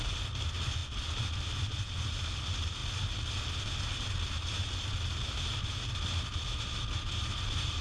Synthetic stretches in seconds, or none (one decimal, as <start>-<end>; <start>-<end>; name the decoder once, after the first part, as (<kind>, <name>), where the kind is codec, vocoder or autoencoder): none